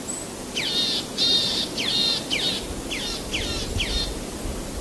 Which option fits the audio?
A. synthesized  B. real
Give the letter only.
B